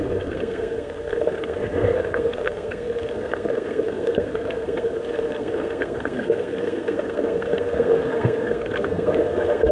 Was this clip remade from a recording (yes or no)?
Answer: yes